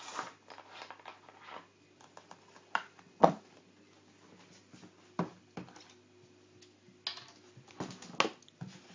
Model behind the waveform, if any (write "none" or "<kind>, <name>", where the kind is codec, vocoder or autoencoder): none